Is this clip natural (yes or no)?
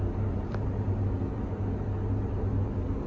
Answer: yes